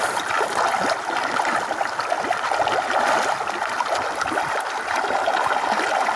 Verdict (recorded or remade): recorded